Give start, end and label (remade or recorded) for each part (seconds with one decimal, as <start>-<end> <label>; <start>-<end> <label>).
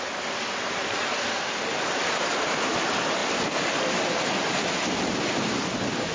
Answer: 0.0-6.1 recorded